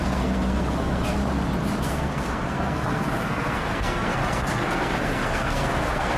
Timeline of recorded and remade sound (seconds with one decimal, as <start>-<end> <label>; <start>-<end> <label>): 0.0-1.2 remade; 1.2-1.8 recorded; 1.8-6.2 remade